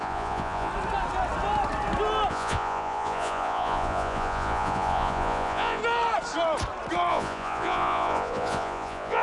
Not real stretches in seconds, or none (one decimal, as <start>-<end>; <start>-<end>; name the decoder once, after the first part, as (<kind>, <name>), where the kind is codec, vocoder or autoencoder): 0.0-0.7 (vocoder, Vocos); 2.3-5.8; 7.1-9.2